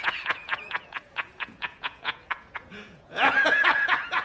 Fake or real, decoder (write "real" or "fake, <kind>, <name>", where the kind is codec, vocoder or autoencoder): fake, vocoder, Vocos